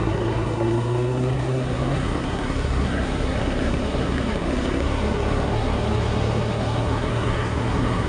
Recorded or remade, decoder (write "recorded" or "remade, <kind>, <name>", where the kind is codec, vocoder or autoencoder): remade, codec, SNAC